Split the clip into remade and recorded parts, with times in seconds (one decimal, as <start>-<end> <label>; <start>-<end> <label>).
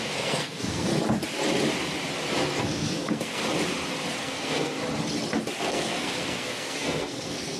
0.0-0.9 remade; 0.9-2.6 recorded; 2.6-3.4 remade; 3.4-4.2 recorded; 4.2-4.8 remade; 4.8-5.6 recorded; 5.6-7.6 remade